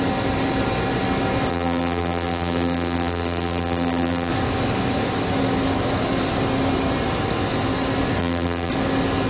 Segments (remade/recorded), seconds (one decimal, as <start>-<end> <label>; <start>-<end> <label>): 0.0-1.5 recorded; 1.5-4.3 remade; 4.3-8.2 recorded; 8.2-8.7 remade; 8.7-9.3 recorded